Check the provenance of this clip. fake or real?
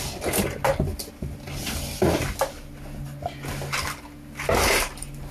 real